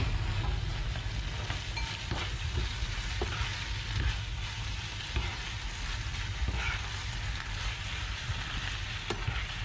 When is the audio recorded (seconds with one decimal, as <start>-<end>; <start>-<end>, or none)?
0.0-9.6